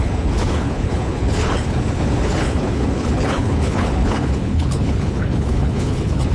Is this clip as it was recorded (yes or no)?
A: no